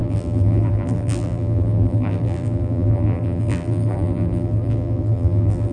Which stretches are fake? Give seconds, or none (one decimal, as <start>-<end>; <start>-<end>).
0.0-5.7

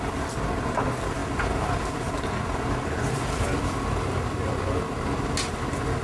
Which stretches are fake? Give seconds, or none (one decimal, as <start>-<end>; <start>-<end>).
1.2-4.8

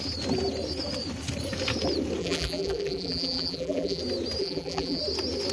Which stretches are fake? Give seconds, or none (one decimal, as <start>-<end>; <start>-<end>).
2.2-4.0; 4.4-5.0

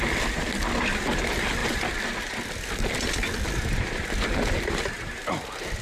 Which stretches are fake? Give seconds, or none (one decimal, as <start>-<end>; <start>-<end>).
none

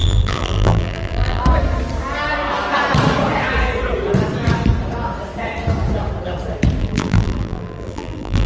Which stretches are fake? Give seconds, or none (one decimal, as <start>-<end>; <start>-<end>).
0.0-1.4; 6.8-8.5

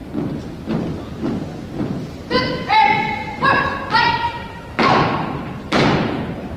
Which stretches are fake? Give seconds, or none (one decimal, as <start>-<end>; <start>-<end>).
4.0-6.6

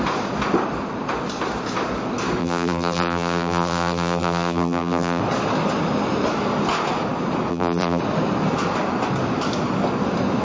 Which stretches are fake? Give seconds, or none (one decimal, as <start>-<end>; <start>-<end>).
2.4-5.2; 7.5-8.0